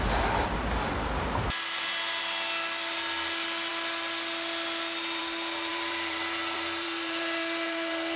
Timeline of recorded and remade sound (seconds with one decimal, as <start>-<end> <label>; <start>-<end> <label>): 0.0-5.7 recorded; 5.7-8.2 remade